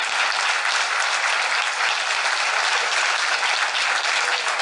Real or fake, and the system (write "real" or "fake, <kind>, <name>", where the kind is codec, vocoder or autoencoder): real